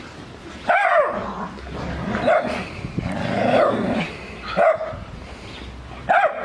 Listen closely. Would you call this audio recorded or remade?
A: recorded